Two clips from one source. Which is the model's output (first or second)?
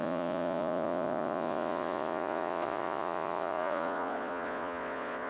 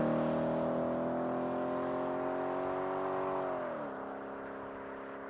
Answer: first